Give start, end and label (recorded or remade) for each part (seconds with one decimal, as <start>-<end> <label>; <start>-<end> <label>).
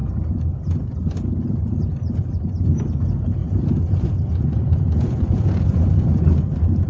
0.0-3.4 recorded; 3.4-6.2 remade; 6.2-6.9 recorded